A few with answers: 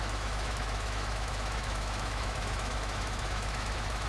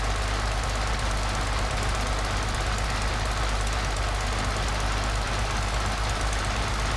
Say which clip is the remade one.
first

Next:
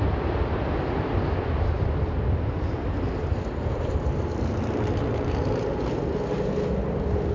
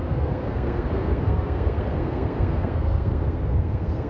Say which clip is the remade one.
second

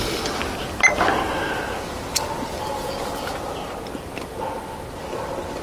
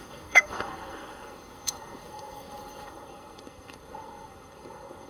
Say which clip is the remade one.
second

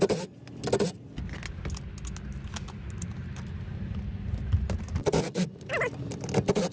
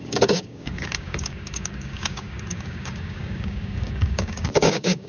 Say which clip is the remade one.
second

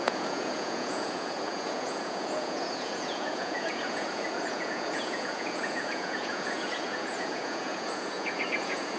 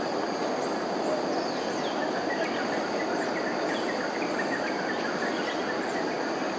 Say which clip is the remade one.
first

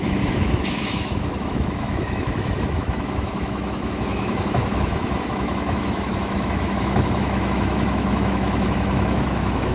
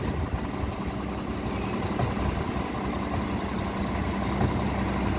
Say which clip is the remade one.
first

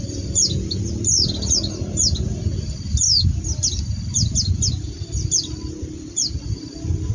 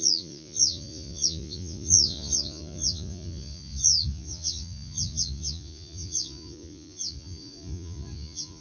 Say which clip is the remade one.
second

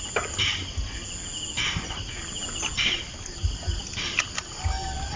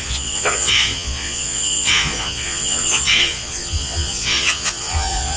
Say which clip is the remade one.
second